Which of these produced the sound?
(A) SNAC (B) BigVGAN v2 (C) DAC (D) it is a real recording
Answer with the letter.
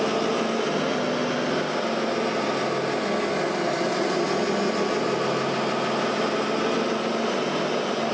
D